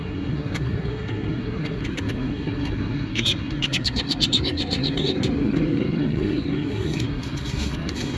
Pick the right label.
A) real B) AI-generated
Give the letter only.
B